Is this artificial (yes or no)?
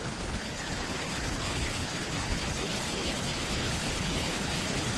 yes